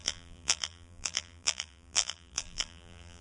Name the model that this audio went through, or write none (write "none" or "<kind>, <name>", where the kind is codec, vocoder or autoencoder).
vocoder, BigVGAN v2